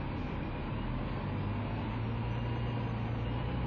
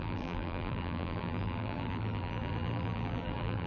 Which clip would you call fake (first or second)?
second